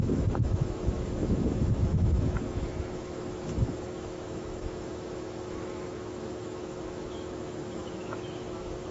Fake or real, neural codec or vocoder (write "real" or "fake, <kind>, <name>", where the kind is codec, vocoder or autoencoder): fake, autoencoder, DAC-VAE